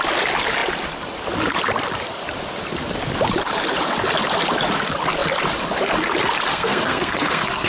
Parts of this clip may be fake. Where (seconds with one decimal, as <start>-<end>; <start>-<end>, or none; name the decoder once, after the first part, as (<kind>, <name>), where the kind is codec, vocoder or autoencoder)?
6.5-7.7 (codec, SNAC)